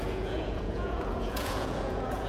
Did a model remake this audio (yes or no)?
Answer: yes